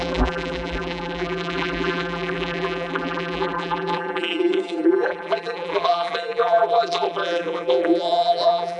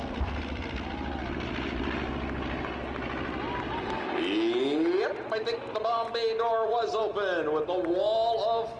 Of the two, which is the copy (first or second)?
first